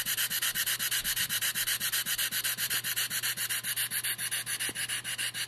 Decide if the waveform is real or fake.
real